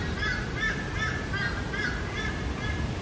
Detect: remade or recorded recorded